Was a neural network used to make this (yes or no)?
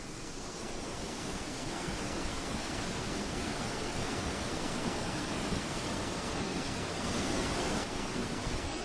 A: yes